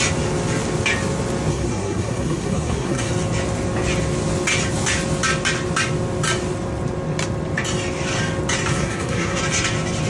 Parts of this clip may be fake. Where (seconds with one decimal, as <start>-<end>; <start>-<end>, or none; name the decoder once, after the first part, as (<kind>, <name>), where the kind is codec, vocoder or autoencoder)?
1.5-3.1 (codec, SNAC); 8.7-9.4